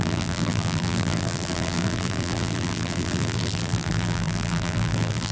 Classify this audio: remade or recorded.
remade